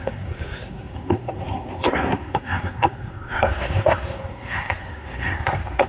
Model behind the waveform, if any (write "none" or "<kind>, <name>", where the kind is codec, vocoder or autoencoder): codec, SNAC